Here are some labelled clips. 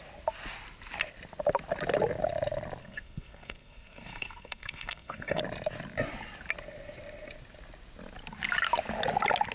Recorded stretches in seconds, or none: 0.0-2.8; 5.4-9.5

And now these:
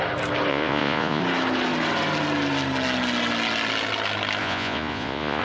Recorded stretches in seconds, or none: 0.0-0.5; 1.2-4.4

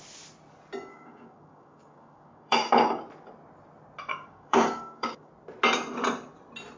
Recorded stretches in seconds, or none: 0.0-0.9; 3.0-4.1; 5.3-6.8

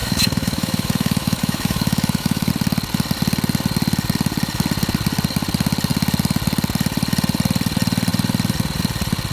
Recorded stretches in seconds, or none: 2.5-9.3